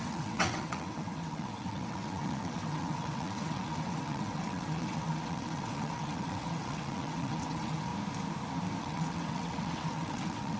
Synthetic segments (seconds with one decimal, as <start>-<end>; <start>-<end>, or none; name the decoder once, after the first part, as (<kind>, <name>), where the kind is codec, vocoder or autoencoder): 0.0-7.9 (vocoder, WaveNeXt); 8.8-10.6